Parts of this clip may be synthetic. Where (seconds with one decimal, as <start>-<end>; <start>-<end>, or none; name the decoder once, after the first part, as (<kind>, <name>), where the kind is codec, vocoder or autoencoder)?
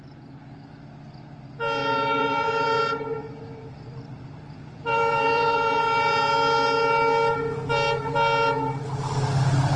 1.8-6.1 (vocoder, BigVGAN v2)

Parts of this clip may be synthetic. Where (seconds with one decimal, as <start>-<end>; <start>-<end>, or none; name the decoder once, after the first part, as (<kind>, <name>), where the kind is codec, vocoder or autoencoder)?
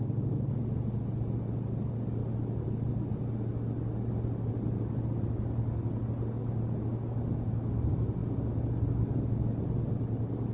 none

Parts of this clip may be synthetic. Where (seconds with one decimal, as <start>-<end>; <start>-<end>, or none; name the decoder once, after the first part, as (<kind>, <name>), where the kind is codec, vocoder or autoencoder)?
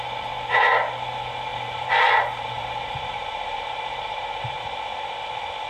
1.5-4.6 (vocoder, BigVGAN v2)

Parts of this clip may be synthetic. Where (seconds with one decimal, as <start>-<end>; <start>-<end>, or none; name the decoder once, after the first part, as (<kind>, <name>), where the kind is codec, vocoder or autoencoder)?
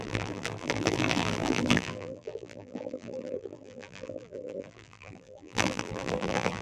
0.0-6.6 (vocoder, BigVGAN v2)